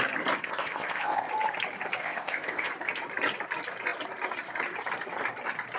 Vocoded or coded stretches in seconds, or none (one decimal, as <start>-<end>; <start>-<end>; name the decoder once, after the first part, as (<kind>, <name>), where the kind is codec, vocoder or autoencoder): 0.4-1.3 (codec, ZipCodec); 2.0-2.7